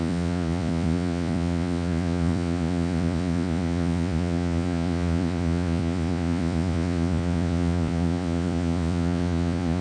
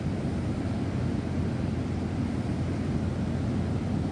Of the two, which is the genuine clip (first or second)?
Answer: second